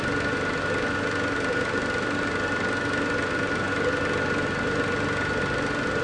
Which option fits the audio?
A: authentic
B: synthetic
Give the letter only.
A